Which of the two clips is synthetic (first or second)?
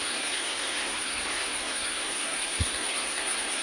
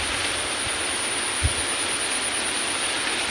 first